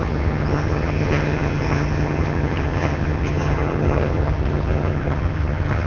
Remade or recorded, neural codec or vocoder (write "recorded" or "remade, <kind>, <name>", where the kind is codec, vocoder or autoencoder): remade, vocoder, HiFi-GAN